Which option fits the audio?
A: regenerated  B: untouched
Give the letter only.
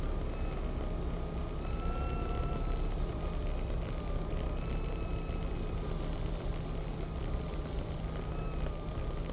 B